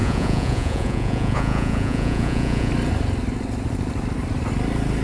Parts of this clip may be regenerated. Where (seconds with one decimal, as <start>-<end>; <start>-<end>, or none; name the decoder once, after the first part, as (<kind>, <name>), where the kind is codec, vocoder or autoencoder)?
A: 0.0-2.7 (vocoder, Vocos)